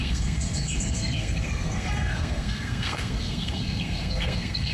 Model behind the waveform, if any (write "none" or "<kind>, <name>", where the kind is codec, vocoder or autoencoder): codec, SNAC